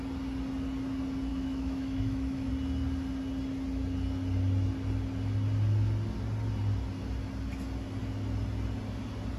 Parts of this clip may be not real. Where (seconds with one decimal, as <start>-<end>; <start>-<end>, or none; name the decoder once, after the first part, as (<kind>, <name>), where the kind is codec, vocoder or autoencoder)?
1.3-2.5 (autoencoder, DAC-VAE)